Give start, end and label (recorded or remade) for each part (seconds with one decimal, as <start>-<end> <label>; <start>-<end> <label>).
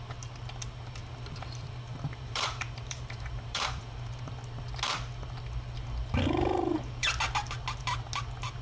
0.0-1.0 recorded; 1.0-4.3 remade; 4.3-8.6 recorded